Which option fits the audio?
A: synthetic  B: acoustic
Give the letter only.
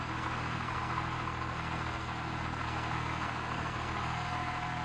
A